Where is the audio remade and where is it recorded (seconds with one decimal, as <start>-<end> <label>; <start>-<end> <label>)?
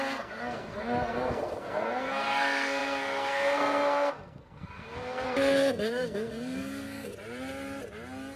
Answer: 0.0-7.1 remade; 7.1-8.4 recorded